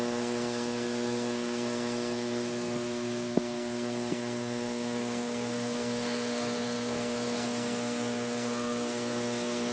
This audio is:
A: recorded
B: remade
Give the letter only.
B